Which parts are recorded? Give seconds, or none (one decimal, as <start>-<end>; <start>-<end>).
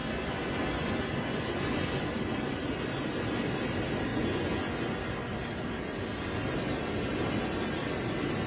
2.1-4.1; 5.0-8.5